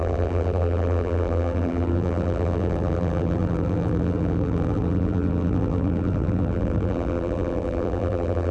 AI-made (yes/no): yes